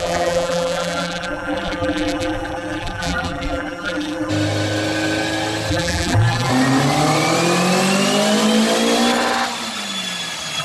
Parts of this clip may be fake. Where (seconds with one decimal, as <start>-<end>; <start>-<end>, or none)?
0.0-4.3; 5.7-6.5

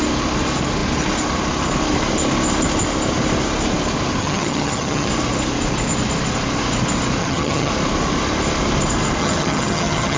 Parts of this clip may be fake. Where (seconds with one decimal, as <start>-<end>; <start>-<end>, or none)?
4.2-5.1; 7.2-7.7; 9.2-10.2

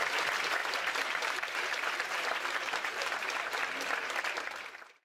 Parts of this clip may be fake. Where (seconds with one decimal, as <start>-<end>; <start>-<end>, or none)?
0.6-3.6